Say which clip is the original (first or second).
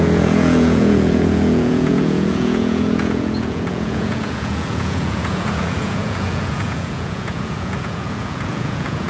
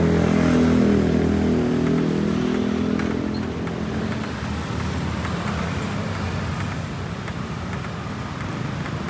second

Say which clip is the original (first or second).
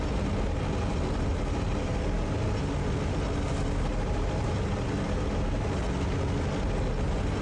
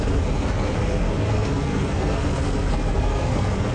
first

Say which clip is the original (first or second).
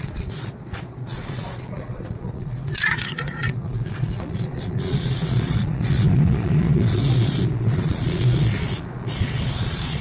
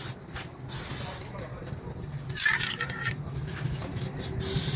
second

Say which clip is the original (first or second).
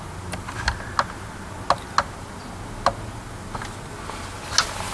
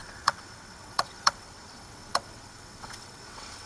first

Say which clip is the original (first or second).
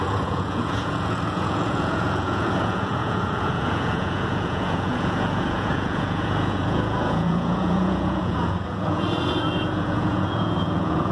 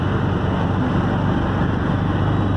second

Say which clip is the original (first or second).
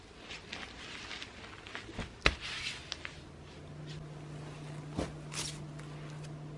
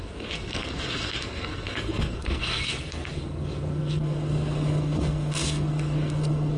first